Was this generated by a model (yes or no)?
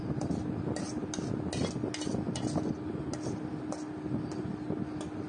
no